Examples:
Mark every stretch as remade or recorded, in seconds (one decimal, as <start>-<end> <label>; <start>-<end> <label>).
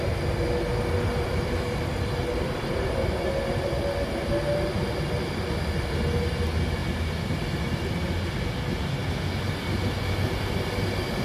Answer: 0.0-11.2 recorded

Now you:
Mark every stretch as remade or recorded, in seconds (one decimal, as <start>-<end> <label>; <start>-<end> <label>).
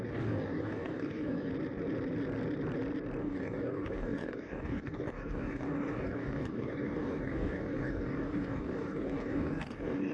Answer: 0.0-1.5 remade; 1.5-3.2 recorded; 3.2-10.1 remade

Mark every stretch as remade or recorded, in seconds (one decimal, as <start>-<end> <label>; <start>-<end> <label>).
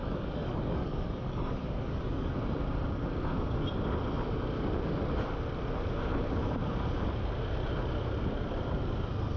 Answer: 0.0-2.3 remade; 2.3-9.4 recorded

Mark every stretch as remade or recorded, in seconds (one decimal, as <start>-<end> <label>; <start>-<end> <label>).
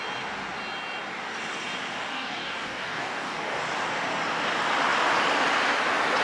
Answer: 0.0-2.1 recorded; 2.1-3.6 remade; 3.6-6.2 recorded